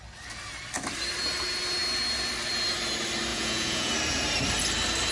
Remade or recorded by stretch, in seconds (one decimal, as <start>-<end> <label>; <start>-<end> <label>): 0.0-3.3 recorded; 3.3-3.9 remade; 3.9-5.1 recorded